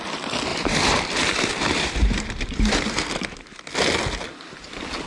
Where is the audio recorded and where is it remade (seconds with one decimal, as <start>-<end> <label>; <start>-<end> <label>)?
0.0-0.5 recorded; 0.5-3.6 remade; 3.6-5.1 recorded